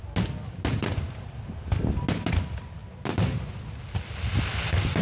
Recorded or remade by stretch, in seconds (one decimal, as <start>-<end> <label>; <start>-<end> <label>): 0.0-5.0 recorded